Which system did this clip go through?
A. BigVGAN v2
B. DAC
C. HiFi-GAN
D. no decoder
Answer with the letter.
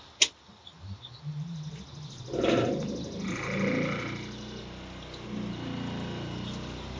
D